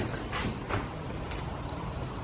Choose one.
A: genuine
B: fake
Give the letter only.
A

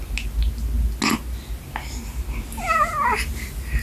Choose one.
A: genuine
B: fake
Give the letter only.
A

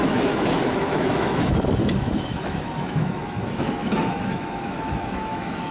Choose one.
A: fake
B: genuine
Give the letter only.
A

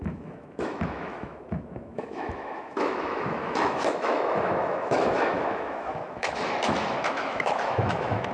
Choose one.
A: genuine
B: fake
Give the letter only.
B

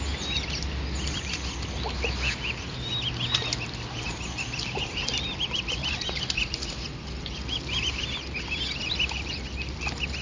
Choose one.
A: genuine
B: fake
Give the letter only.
A